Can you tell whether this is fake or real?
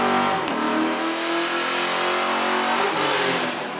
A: real